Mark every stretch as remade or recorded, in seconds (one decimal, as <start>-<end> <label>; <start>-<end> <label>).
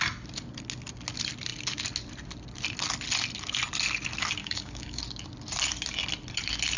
0.0-4.4 recorded; 4.4-5.0 remade; 5.0-6.8 recorded